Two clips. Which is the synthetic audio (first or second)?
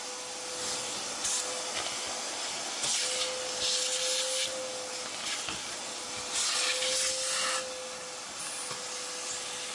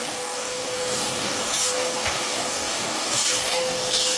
second